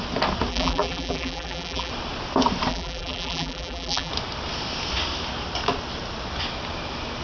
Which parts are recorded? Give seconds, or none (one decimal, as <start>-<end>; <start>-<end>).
0.0-0.5; 1.9-2.7; 4.1-7.2